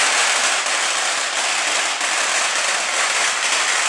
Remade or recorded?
recorded